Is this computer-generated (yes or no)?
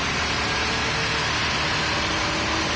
no